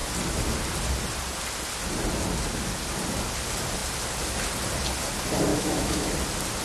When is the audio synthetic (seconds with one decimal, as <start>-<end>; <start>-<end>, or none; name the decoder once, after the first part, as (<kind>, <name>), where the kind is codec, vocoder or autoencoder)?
5.5-6.1 (autoencoder, DAC-VAE)